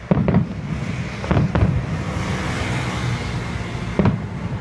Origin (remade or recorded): recorded